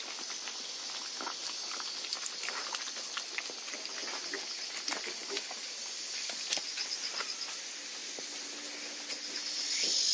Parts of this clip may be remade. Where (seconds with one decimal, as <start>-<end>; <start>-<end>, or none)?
5.2-6.6